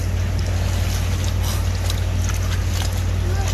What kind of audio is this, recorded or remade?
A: recorded